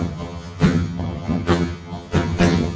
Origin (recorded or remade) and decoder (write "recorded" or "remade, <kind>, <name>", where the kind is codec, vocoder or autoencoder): remade, vocoder, HiFi-GAN